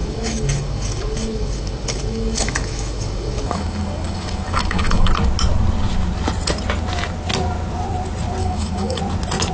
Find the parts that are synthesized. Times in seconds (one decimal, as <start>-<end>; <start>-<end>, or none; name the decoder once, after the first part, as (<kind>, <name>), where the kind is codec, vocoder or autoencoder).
0.0-5.1 (codec, DAC); 8.4-9.0